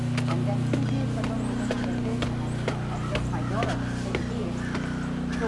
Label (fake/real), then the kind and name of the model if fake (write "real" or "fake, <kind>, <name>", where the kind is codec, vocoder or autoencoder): real